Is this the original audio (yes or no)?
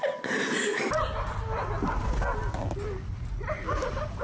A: yes